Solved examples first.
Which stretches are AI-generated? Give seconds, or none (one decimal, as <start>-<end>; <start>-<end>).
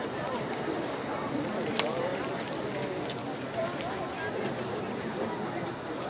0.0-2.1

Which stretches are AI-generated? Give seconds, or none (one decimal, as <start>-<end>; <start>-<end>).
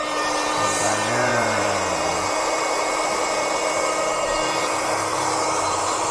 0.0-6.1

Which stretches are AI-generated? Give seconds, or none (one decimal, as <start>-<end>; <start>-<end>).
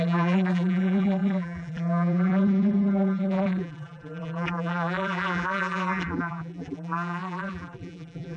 0.0-8.4